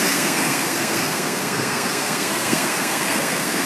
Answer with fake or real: fake